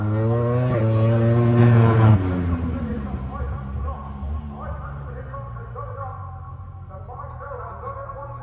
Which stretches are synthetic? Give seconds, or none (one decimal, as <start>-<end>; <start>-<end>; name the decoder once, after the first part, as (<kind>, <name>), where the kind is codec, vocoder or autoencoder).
1.6-2.1 (vocoder, Vocos)